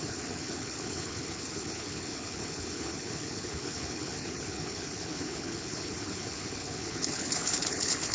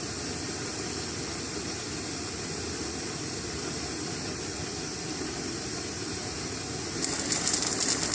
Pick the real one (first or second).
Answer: second